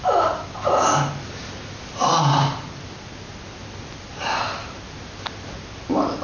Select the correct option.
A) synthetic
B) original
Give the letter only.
B